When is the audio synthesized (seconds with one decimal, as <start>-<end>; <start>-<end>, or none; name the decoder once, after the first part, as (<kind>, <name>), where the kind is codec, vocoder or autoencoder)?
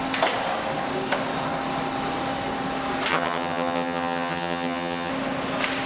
3.1-5.1 (vocoder, HiFi-GAN)